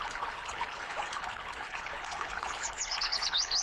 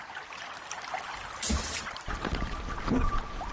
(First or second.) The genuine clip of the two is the second